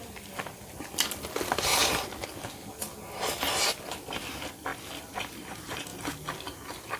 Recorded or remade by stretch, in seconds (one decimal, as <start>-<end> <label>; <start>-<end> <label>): 0.0-7.0 recorded